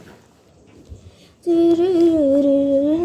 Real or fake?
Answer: real